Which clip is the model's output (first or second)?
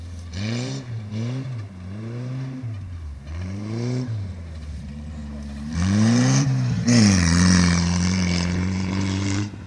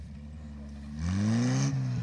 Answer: first